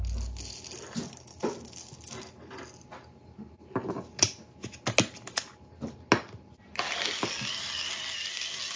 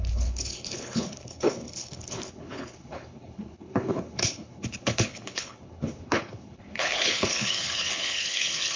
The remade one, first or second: second